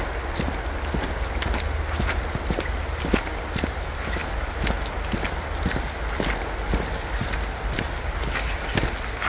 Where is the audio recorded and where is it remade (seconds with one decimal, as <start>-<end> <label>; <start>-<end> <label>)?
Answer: 0.0-9.3 recorded